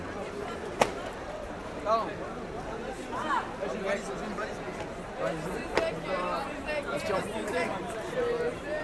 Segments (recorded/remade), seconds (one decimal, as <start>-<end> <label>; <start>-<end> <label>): 0.0-1.6 remade; 1.6-4.1 recorded; 4.1-8.8 remade